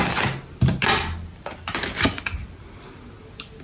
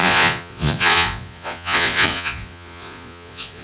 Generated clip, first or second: second